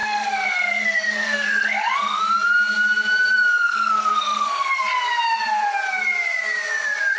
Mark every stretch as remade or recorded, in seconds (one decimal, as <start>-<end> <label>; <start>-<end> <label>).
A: 0.0-2.2 remade; 2.2-3.5 recorded; 3.5-4.8 remade; 4.8-7.2 recorded